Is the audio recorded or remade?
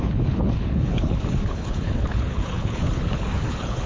remade